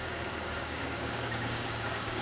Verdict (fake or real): fake